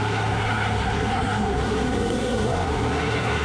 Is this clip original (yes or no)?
no